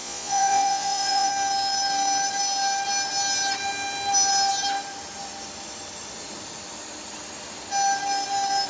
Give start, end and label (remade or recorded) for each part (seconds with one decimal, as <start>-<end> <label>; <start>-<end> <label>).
0.0-1.3 remade; 1.3-8.7 recorded